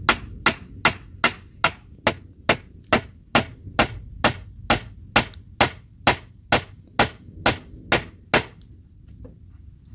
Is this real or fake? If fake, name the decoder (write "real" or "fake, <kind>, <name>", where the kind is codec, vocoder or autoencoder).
real